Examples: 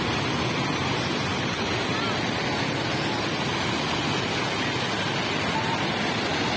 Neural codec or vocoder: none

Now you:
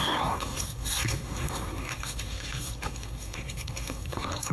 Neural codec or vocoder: codec, SNAC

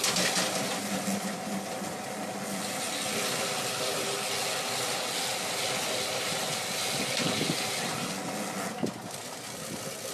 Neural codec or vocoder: none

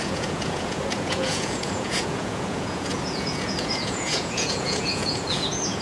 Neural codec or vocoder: vocoder, Vocos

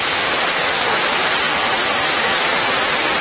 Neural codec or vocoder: vocoder, BigVGAN v2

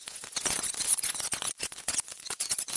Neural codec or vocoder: vocoder, Vocos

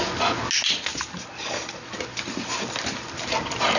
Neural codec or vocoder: none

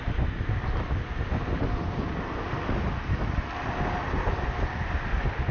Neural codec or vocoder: none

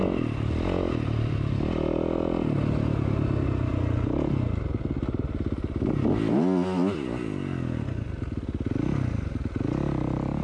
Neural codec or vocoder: none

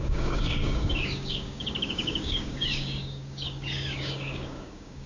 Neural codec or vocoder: codec, DAC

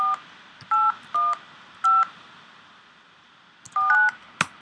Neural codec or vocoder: none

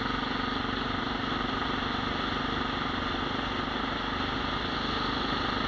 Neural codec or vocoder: none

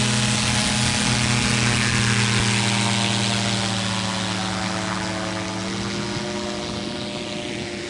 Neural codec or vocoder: none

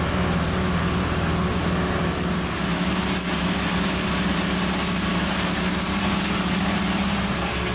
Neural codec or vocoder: none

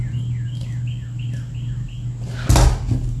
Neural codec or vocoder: none